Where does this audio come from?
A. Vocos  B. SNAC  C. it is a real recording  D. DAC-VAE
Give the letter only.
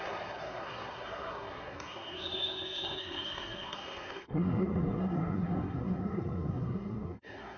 B